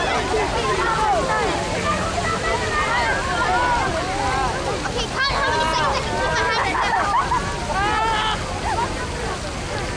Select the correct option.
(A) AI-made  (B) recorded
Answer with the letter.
B